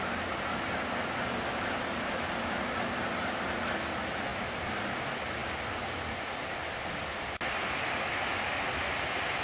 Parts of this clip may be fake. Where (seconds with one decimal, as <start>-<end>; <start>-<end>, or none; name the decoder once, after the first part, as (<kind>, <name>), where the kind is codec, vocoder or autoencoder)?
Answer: none